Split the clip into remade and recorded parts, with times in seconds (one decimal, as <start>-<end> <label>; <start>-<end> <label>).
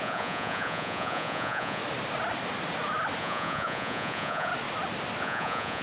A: 0.0-1.8 remade; 1.8-3.2 recorded; 3.2-4.5 remade; 4.5-5.2 recorded; 5.2-5.8 remade